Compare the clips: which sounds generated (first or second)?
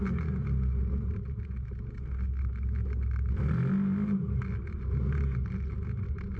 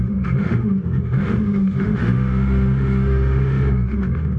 second